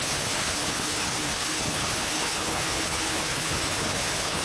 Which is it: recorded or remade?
remade